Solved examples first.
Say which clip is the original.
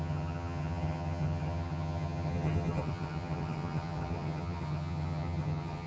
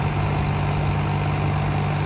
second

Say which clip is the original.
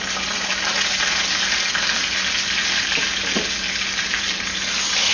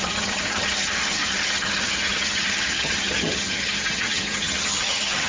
first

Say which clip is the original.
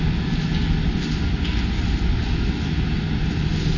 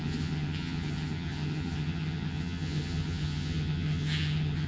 first